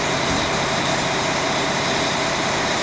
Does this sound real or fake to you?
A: real